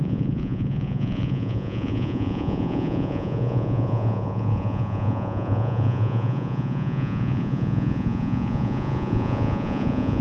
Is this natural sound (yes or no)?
no